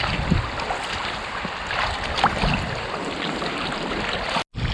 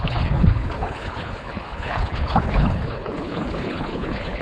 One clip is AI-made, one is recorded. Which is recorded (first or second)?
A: first